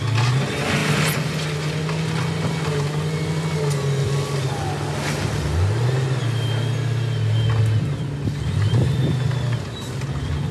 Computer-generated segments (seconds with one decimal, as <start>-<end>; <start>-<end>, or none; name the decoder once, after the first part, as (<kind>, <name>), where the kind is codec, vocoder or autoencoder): none